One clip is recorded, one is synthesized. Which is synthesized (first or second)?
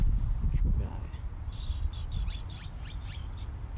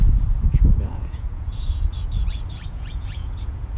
second